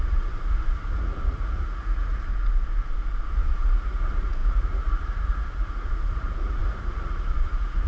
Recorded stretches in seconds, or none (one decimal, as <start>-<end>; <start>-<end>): 2.3-3.3